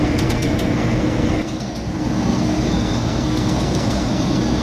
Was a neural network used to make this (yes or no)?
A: yes